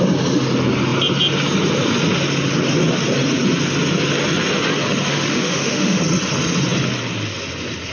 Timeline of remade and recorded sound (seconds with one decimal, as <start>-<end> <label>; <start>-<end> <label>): 0.0-5.1 recorded; 5.1-6.0 remade; 6.0-7.9 recorded